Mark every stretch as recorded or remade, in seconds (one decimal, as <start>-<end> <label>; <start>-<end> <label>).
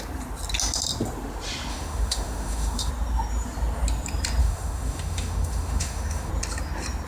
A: 0.0-1.7 recorded; 1.7-2.9 remade; 2.9-4.4 recorded; 4.4-6.3 remade; 6.3-7.1 recorded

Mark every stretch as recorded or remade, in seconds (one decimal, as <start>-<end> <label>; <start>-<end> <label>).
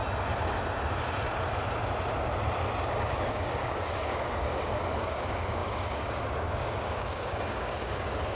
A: 0.0-2.9 recorded; 2.9-8.3 remade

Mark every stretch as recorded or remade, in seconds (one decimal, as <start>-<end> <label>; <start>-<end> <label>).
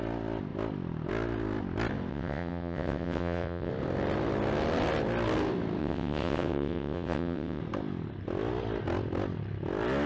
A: 0.0-2.1 recorded; 2.1-3.7 remade; 3.7-5.8 recorded; 5.8-7.6 remade; 7.6-10.1 recorded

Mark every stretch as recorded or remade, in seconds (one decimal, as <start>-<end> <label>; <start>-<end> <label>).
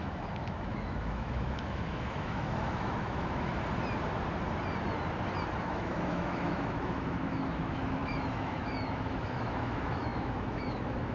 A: 0.0-3.5 remade; 3.5-5.6 recorded; 5.6-11.1 remade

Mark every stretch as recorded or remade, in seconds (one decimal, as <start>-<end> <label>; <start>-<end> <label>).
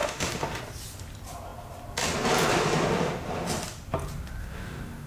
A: 0.0-0.6 remade; 0.6-4.4 recorded; 4.4-5.1 remade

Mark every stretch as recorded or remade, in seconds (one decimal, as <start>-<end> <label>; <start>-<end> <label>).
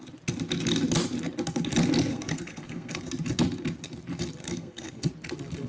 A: 0.0-2.1 recorded; 2.1-3.1 remade; 3.1-4.4 recorded; 4.4-5.1 remade; 5.1-5.7 recorded